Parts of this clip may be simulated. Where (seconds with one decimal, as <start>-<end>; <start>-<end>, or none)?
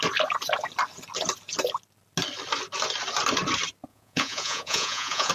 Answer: 3.9-5.3